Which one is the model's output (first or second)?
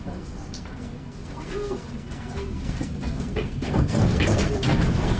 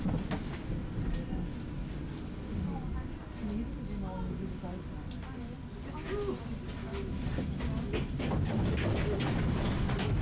first